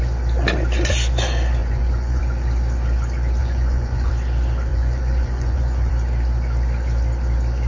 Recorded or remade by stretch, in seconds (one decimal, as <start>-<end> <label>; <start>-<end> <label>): 0.0-1.6 recorded; 1.6-2.2 remade; 2.2-3.4 recorded; 3.4-4.1 remade; 4.1-4.7 recorded; 4.7-5.9 remade; 5.9-7.7 recorded